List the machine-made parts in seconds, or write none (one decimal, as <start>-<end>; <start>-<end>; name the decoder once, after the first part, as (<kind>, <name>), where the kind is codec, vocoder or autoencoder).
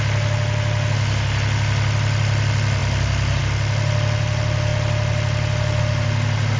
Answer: none